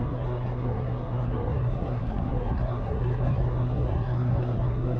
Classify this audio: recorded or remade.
remade